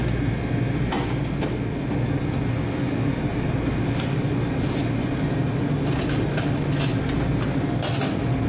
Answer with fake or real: real